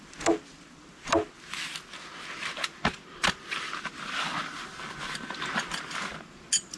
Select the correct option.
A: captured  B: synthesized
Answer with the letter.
A